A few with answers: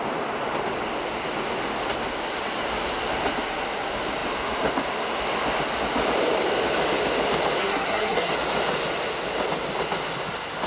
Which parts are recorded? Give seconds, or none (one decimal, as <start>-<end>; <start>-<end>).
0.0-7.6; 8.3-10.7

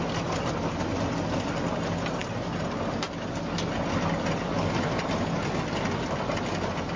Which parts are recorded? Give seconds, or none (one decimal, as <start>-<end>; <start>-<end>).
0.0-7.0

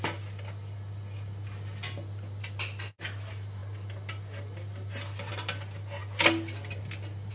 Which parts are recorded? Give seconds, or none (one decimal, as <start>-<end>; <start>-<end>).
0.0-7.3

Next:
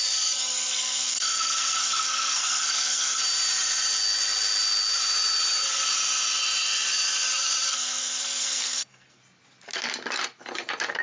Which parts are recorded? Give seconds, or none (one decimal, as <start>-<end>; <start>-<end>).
0.0-0.5; 3.2-7.7; 9.2-11.0

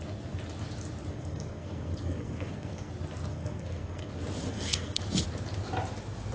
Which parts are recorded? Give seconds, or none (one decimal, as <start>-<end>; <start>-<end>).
0.0-1.1; 2.9-3.3; 4.1-4.5; 5.0-6.3

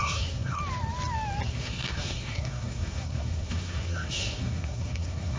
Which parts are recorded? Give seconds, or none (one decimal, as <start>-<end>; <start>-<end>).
0.6-1.5